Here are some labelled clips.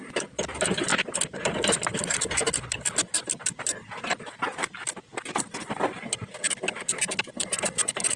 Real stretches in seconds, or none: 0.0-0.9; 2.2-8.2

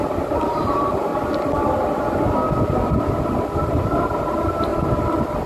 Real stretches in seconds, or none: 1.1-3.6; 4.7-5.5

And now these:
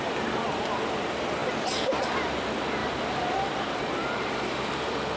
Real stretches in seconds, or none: 0.0-2.8; 3.5-4.0

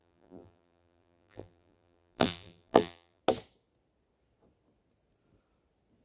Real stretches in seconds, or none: 3.2-6.0